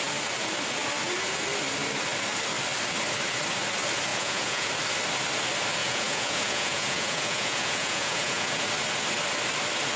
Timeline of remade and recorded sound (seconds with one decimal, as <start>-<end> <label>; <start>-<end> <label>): 0.0-4.1 recorded; 4.1-4.7 remade; 4.7-5.8 recorded; 5.8-8.6 remade; 8.6-10.0 recorded